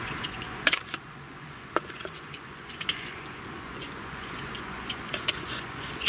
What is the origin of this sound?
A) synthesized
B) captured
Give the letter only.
A